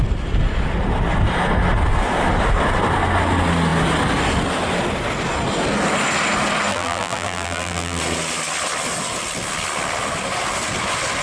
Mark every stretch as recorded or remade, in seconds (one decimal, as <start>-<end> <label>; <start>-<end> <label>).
0.0-6.7 recorded; 6.7-8.0 remade; 8.0-11.2 recorded